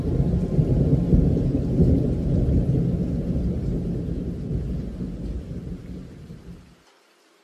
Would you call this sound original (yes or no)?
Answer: yes